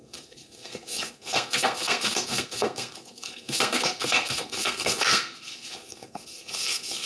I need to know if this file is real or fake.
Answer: fake